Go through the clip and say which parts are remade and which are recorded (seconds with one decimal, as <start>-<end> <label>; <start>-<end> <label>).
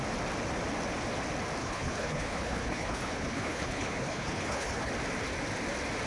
0.0-1.6 recorded; 1.6-4.9 remade; 4.9-6.1 recorded